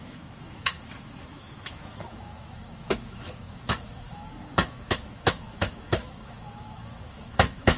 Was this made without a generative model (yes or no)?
no